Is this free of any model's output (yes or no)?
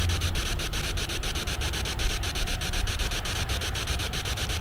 yes